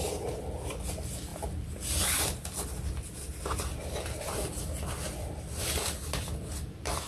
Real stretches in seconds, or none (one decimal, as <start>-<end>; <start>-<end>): 0.0-7.1